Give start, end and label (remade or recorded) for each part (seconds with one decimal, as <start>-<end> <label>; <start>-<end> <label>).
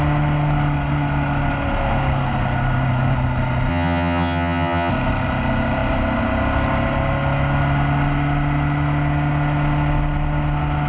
0.0-3.7 recorded; 3.7-4.9 remade; 4.9-10.9 recorded